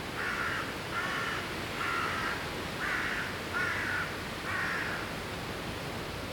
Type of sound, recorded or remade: recorded